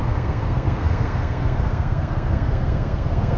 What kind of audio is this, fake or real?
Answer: fake